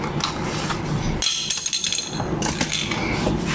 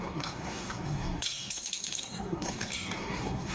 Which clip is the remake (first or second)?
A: second